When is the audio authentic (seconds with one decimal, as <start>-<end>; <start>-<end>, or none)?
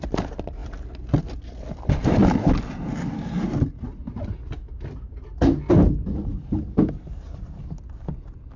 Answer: 0.0-8.6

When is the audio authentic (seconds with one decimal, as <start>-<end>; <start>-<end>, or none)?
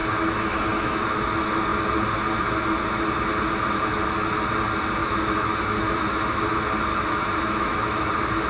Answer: 1.0-5.0; 6.4-6.9; 8.1-8.5